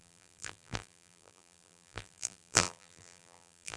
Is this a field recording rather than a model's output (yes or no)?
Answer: no